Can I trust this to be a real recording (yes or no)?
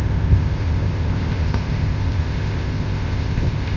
no